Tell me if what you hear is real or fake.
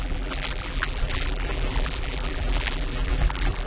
fake